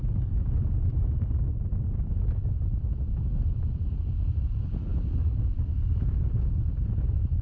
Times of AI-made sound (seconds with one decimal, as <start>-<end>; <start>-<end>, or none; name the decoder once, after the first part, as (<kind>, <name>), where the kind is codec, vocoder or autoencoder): none